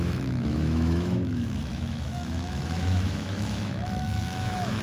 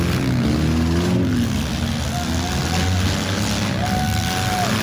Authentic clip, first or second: second